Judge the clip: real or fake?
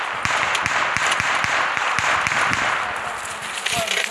real